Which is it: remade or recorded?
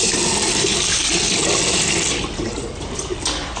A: recorded